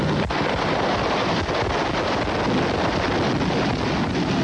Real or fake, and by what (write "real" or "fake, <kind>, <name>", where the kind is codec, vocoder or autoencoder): real